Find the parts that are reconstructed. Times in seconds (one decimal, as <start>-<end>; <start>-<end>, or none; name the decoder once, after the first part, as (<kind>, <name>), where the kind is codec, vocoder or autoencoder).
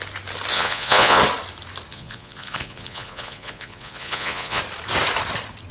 0.5-1.2 (vocoder, Vocos); 1.9-4.6